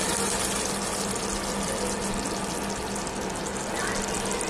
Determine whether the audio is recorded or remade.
recorded